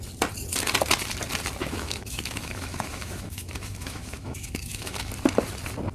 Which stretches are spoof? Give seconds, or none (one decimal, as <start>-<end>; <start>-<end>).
1.6-5.1